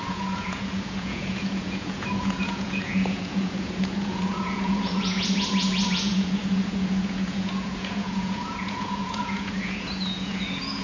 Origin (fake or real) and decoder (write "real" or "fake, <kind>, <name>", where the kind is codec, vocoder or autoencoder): fake, vocoder, Vocos